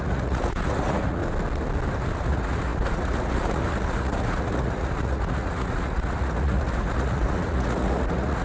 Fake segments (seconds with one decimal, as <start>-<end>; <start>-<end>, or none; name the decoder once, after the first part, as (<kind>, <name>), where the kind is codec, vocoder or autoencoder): 0.0-1.2 (vocoder, Vocos); 2.2-8.4